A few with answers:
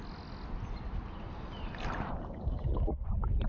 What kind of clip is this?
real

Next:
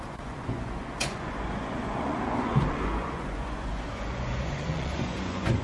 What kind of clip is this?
fake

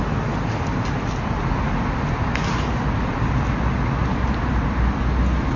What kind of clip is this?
real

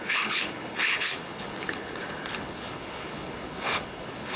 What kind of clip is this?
fake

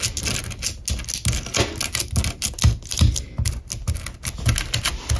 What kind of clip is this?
real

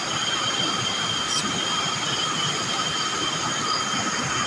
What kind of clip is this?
real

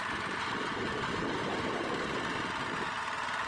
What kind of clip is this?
real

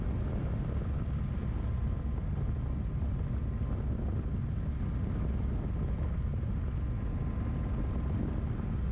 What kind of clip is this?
real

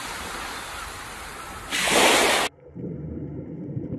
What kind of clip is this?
real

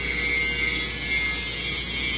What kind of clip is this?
real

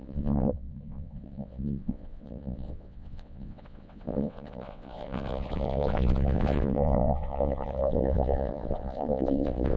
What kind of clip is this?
fake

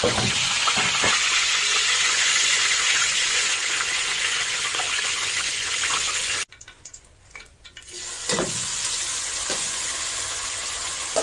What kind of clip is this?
fake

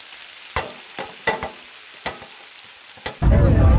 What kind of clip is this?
real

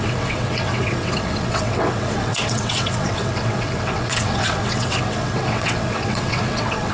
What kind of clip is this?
fake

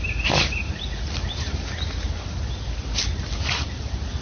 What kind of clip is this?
real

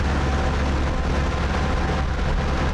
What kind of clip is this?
real